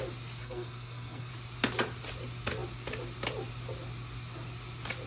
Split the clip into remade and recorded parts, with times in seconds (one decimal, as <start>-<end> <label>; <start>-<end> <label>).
0.0-0.4 recorded; 0.4-1.3 remade; 1.3-5.1 recorded